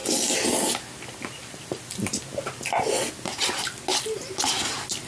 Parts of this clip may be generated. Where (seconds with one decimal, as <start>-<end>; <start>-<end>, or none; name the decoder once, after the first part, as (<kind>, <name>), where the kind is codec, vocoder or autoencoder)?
none